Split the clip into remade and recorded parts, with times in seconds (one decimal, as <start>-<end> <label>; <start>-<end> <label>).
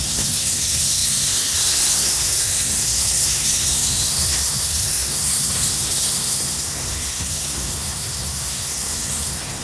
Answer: 0.0-9.6 remade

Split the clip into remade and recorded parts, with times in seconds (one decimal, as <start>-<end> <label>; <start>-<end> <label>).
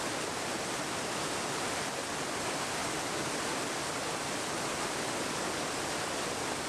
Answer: 0.0-6.7 recorded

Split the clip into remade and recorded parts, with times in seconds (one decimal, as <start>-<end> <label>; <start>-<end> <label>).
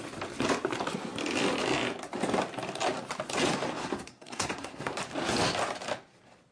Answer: 0.0-3.8 recorded; 3.8-4.9 remade; 4.9-6.5 recorded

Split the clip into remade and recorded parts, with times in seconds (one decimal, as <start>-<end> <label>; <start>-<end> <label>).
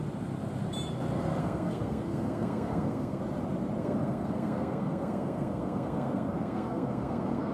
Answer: 0.0-1.4 recorded; 1.4-3.2 remade; 3.2-3.8 recorded; 3.8-7.5 remade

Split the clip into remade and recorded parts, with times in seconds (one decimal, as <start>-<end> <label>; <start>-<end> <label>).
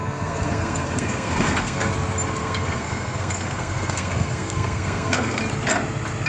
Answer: 0.0-1.9 remade; 1.9-2.4 recorded; 2.4-5.4 remade; 5.4-6.3 recorded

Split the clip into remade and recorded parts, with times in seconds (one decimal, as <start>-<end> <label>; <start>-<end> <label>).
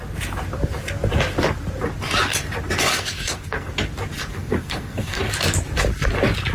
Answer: 0.0-2.9 recorded; 2.9-3.7 remade; 3.7-4.3 recorded; 4.3-5.2 remade; 5.2-6.5 recorded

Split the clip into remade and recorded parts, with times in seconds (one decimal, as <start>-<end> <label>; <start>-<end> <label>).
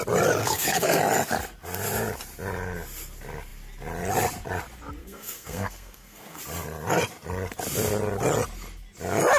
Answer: 0.0-0.4 recorded; 0.4-1.0 remade; 1.0-5.0 recorded; 5.0-6.4 remade; 6.4-9.4 recorded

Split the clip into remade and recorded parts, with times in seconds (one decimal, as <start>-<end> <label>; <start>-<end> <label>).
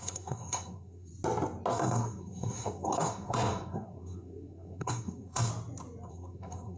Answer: 0.0-1.1 remade; 1.1-1.7 recorded; 1.7-5.5 remade; 5.5-6.1 recorded; 6.1-6.8 remade